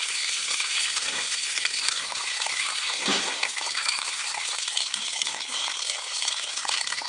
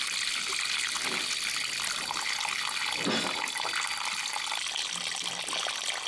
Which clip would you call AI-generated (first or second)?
first